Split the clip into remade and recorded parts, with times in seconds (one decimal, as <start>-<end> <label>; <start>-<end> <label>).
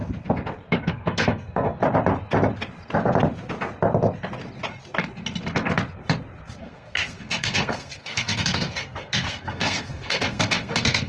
0.0-0.9 recorded; 0.9-1.8 remade; 1.8-6.6 recorded; 6.6-11.1 remade